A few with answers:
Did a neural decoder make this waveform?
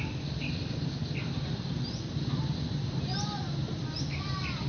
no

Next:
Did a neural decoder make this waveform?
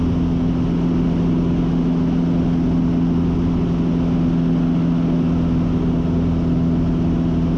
no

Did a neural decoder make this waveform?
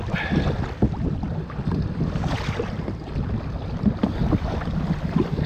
no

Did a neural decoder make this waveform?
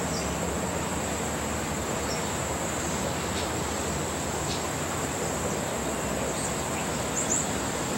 no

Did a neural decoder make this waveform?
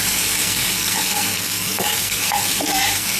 yes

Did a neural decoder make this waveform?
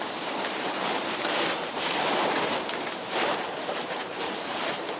yes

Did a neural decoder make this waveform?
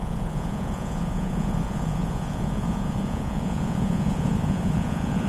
yes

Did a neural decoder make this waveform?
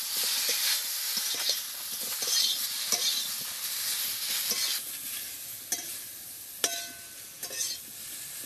no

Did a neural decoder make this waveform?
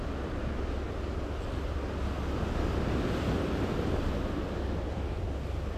no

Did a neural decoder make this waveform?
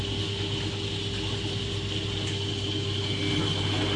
no